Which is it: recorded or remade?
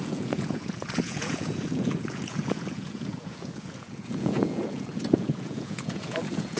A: remade